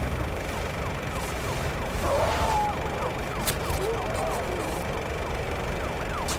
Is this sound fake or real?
real